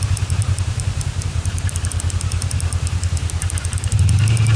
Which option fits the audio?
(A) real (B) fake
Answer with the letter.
B